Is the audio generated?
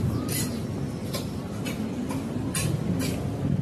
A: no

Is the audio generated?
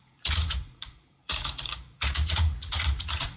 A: yes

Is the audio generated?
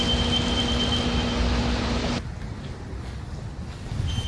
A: no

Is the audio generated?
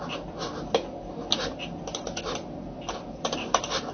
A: no